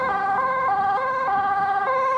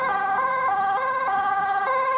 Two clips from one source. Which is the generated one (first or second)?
second